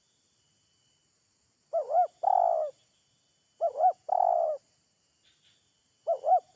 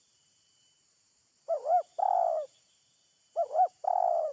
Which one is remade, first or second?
second